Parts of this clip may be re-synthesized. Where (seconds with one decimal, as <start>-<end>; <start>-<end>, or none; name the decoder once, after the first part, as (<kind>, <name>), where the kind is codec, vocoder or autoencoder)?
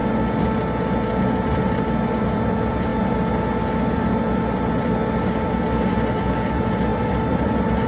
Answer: 2.2-2.9 (vocoder, BigVGAN v2); 3.7-5.0; 5.6-7.9